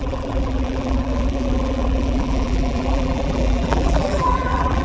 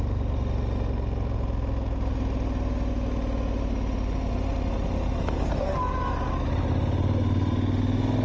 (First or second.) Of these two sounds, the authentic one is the second